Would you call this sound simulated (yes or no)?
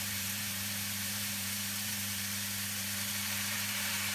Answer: yes